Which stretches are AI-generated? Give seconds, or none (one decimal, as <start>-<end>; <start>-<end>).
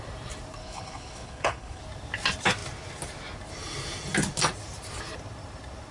0.6-1.8